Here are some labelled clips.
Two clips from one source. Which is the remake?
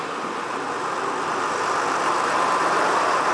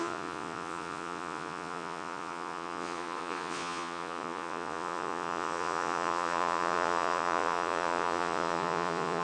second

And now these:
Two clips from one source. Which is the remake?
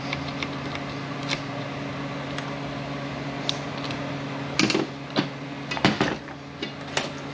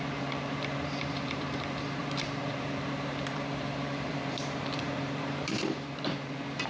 second